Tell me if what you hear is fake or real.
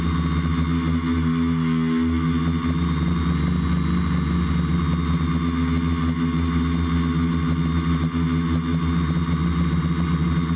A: real